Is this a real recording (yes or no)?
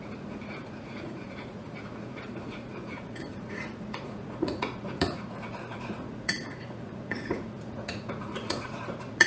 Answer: no